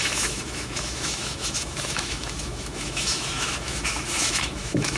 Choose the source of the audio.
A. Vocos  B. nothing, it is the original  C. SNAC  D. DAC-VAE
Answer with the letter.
D